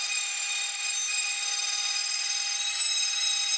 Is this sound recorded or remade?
recorded